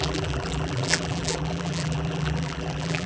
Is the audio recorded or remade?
remade